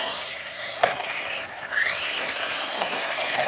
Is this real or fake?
fake